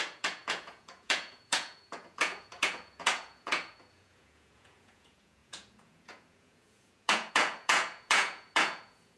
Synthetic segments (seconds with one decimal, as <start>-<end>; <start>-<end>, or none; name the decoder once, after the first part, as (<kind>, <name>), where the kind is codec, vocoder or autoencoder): 0.0-9.2 (vocoder, Vocos)

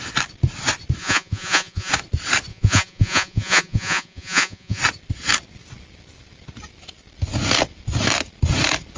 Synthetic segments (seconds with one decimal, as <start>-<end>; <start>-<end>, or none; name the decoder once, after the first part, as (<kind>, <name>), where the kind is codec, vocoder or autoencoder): 1.0-1.9 (vocoder, Vocos); 2.5-4.8

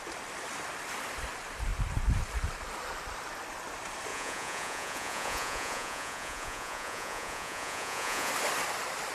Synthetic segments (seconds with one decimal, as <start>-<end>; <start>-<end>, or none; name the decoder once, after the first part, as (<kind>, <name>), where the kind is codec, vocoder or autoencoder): 4.1-8.3 (vocoder, Vocos)

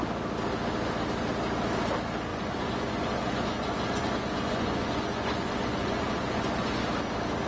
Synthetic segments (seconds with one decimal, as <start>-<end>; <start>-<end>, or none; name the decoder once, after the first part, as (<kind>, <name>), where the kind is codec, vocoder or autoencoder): 2.3-6.8 (vocoder, Vocos)

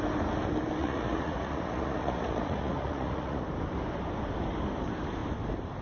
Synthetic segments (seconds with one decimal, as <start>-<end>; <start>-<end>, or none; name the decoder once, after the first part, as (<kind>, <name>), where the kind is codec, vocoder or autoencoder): 0.8-3.4 (vocoder, Vocos)